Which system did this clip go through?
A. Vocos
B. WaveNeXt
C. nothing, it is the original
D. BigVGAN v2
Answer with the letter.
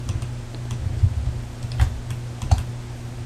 C